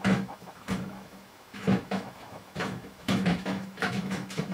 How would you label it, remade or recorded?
remade